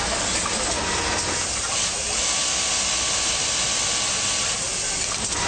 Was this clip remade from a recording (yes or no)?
no